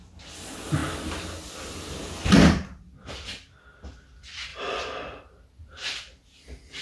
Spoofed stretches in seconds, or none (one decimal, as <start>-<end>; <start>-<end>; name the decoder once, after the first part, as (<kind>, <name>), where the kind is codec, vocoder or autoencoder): none